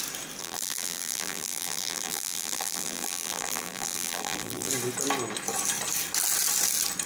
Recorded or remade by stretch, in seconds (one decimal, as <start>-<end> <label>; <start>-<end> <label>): 0.0-0.4 recorded; 0.4-4.7 remade; 4.7-7.1 recorded